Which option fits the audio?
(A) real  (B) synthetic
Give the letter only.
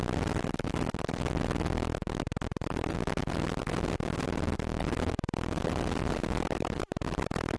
A